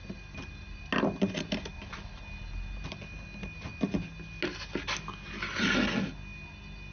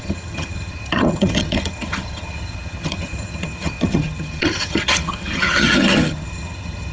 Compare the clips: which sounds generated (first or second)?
second